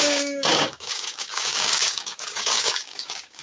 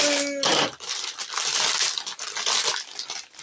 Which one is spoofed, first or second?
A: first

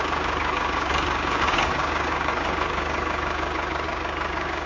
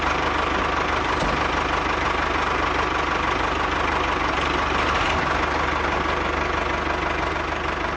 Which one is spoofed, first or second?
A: first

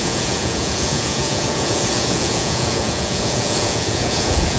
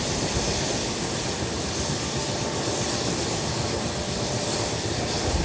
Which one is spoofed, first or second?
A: first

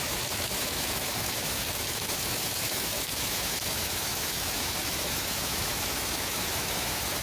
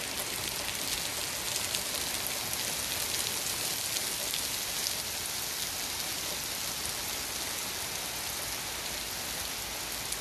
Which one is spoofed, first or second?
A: first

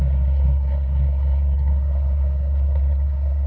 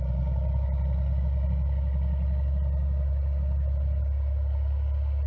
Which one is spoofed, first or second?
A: first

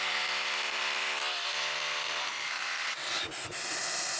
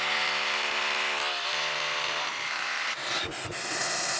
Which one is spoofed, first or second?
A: first